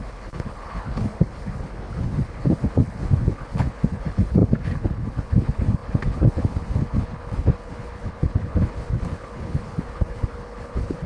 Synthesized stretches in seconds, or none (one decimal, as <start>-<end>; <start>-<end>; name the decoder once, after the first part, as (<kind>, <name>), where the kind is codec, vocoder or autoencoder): 0.0-11.1 (codec, HILCodec)